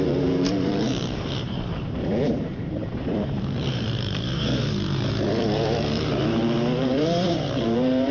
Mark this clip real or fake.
fake